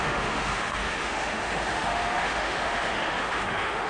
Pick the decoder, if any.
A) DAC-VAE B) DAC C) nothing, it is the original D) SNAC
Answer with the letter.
A